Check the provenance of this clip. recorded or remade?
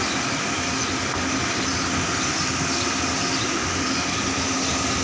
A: recorded